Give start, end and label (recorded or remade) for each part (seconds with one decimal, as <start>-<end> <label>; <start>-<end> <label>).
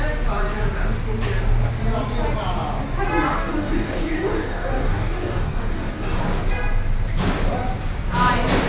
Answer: 0.0-3.3 recorded; 3.3-6.2 remade; 6.2-8.7 recorded